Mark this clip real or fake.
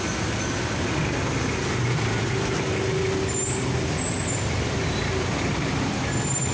real